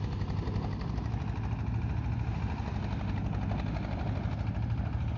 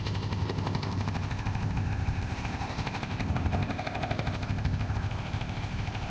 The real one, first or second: first